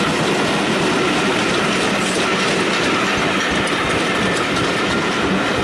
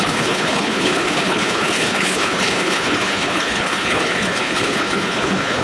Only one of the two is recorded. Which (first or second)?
first